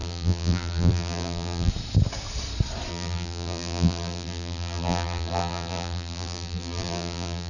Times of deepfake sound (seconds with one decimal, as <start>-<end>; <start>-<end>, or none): 0.0-1.7; 2.9-7.5